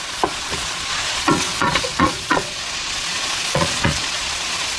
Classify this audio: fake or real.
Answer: fake